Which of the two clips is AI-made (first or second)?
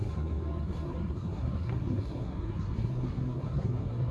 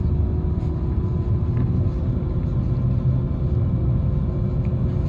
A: first